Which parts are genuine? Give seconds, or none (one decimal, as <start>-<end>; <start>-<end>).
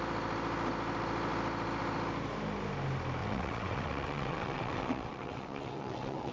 0.0-3.2